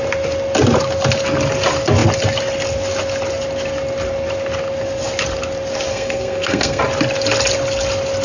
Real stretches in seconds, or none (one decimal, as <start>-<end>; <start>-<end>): 0.0-5.9; 6.8-8.2